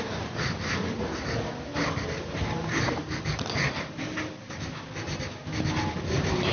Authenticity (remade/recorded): recorded